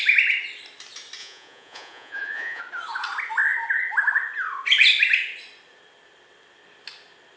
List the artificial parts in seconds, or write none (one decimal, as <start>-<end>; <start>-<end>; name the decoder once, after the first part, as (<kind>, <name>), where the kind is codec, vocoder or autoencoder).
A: 1.2-2.6 (vocoder, Vocos)